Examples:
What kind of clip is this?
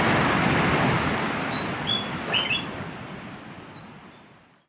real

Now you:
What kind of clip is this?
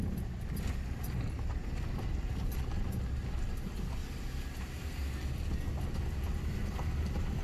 real